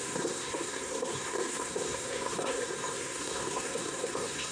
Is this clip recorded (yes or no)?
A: no